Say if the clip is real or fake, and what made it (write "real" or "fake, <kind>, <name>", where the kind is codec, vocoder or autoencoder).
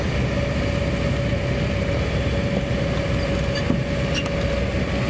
real